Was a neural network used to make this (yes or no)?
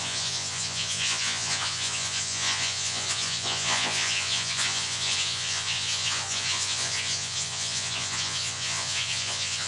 yes